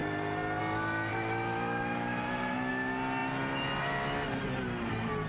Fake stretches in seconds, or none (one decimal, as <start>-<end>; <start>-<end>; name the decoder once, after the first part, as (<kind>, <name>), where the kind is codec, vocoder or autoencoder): 1.1-2.7 (autoencoder, DAC-VAE)